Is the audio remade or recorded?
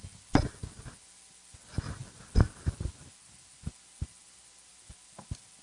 recorded